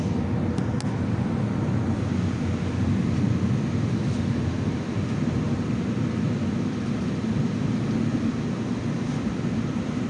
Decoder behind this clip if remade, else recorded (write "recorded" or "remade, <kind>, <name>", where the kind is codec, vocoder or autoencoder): recorded